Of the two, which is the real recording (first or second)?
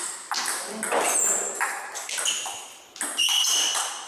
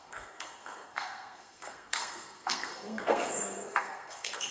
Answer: first